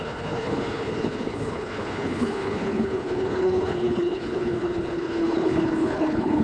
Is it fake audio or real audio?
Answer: fake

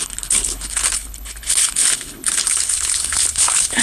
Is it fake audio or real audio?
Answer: fake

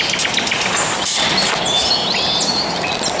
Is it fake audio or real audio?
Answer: real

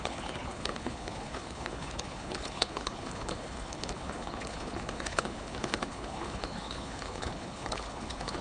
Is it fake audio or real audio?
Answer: fake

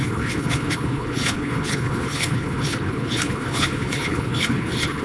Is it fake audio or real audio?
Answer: fake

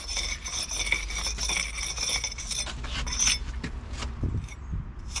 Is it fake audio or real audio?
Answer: real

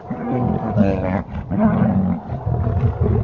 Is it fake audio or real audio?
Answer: real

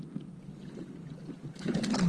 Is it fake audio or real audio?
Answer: real